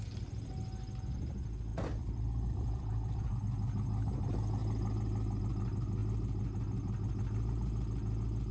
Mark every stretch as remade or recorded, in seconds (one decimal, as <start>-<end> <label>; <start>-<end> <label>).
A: 0.0-1.7 recorded; 1.7-3.3 remade; 3.3-8.5 recorded